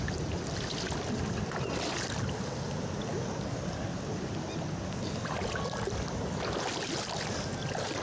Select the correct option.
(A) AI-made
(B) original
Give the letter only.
B